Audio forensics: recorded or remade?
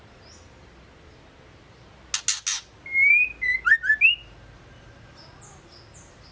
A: recorded